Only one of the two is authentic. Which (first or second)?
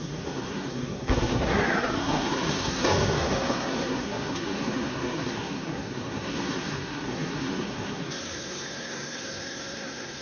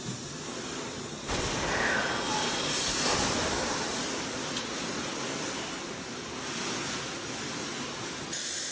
second